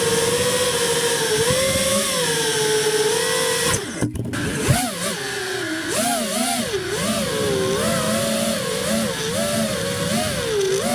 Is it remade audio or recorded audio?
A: recorded